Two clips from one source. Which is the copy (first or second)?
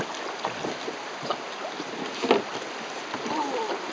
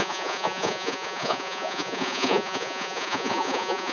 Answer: second